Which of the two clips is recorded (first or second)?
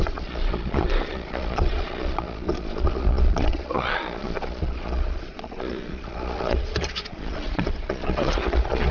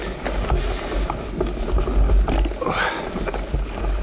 second